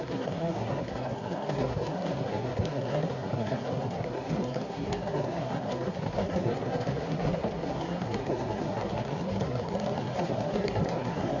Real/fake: fake